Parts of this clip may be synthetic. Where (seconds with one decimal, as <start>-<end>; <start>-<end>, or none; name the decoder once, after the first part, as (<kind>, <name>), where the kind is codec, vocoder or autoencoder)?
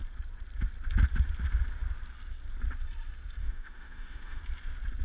3.4-4.4 (autoencoder, DAC-VAE)